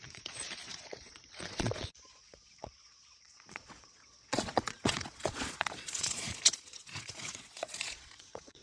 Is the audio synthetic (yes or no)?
yes